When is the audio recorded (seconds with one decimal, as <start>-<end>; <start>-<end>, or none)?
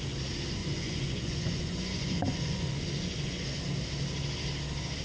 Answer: 0.0-0.6; 3.6-5.0